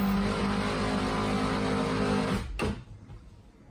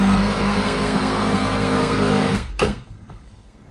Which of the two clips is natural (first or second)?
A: first